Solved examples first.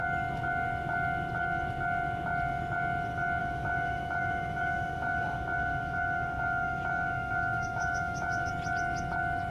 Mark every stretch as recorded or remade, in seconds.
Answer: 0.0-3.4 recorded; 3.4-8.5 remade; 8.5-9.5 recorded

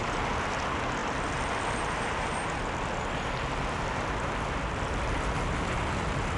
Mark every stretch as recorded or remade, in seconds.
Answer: 0.0-6.4 recorded

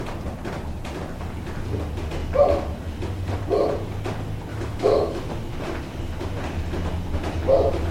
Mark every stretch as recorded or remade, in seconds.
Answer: 0.0-4.5 recorded; 4.5-5.3 remade; 5.3-7.9 recorded

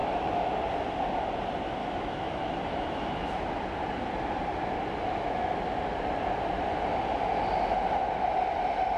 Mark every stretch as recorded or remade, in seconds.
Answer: 0.0-0.5 remade; 0.5-1.8 recorded; 1.8-3.6 remade; 3.6-9.0 recorded

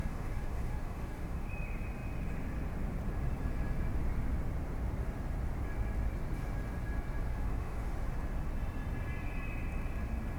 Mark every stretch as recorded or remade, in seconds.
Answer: 0.0-1.5 remade; 1.5-7.3 recorded; 7.3-7.9 remade; 7.9-10.4 recorded

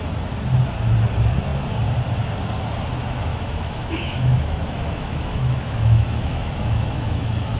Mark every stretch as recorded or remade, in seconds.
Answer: 0.0-3.3 recorded; 3.3-7.6 remade